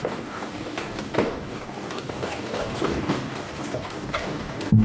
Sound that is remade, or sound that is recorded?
remade